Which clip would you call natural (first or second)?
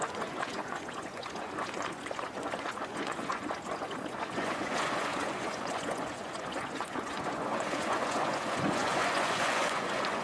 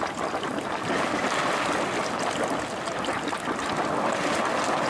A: second